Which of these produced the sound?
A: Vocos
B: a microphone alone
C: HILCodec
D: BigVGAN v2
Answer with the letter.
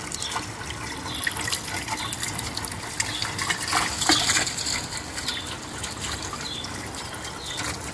B